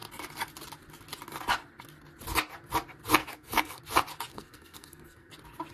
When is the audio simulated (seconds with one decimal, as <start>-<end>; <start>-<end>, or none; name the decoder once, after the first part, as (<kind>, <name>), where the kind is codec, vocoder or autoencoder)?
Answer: 3.2-3.8 (codec, SNAC); 4.3-5.3